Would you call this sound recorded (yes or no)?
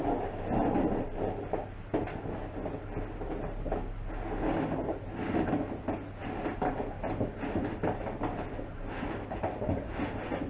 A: yes